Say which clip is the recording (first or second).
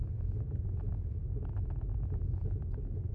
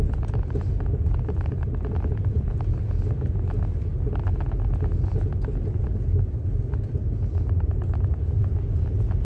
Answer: second